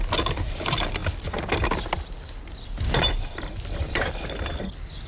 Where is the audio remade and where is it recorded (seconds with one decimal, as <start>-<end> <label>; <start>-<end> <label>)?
0.0-1.0 recorded; 1.0-4.1 remade; 4.1-5.1 recorded